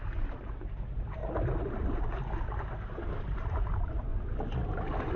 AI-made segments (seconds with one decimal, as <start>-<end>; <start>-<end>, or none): 0.0-1.2; 3.2-4.1